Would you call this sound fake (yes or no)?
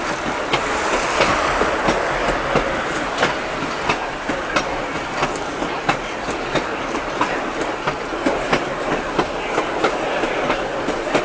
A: no